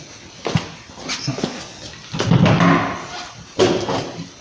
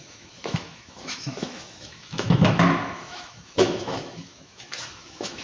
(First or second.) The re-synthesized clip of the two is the second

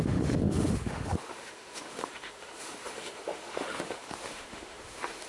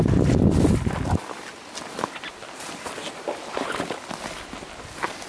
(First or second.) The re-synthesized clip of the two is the first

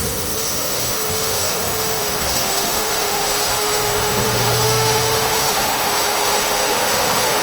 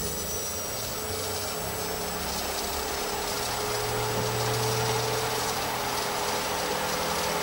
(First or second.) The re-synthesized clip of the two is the first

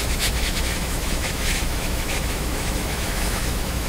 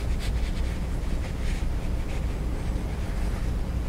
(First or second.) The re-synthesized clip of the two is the first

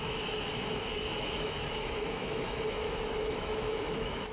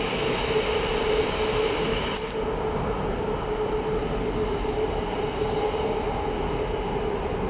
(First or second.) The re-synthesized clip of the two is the first